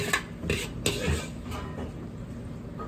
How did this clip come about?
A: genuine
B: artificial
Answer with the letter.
A